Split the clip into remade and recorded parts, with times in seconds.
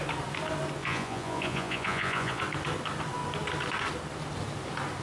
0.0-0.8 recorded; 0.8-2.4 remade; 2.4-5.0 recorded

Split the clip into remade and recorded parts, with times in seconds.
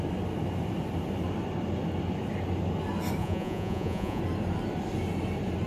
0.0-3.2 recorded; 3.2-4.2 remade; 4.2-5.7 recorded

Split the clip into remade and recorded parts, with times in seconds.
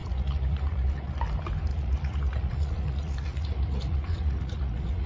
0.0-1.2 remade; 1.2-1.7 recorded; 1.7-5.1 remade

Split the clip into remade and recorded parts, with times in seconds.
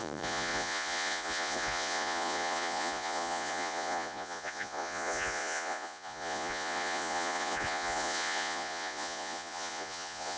0.0-10.4 remade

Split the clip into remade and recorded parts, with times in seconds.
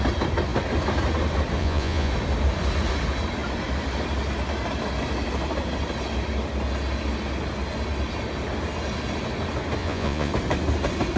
0.0-1.6 recorded; 1.6-2.1 remade; 2.1-9.8 recorded; 9.8-10.3 remade; 10.3-11.2 recorded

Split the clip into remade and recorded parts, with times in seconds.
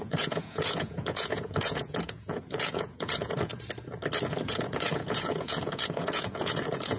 0.0-3.5 remade; 3.5-4.3 recorded; 4.3-7.0 remade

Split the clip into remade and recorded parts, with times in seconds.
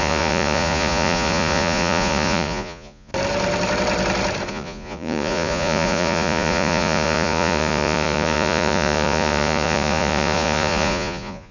0.0-3.1 remade; 3.1-4.5 recorded; 4.5-11.5 remade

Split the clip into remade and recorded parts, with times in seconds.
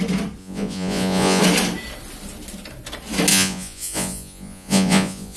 0.0-0.4 recorded; 0.4-1.4 remade; 1.4-3.3 recorded; 3.3-5.4 remade